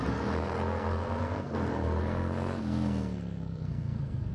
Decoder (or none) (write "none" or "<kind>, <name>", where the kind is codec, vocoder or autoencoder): codec, SNAC